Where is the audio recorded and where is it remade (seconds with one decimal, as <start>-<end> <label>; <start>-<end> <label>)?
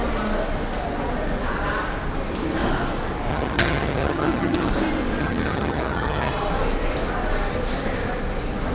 0.0-3.3 recorded; 3.3-4.7 remade; 4.7-5.2 recorded; 5.2-6.3 remade; 6.3-8.7 recorded